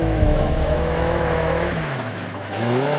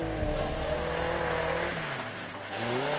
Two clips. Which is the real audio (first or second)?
second